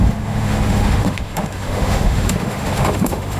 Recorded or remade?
remade